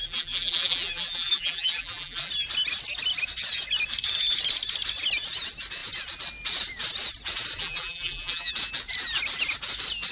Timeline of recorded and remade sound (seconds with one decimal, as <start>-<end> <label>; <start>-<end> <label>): 0.0-2.3 remade; 2.3-7.6 recorded; 7.6-8.5 remade; 8.5-10.1 recorded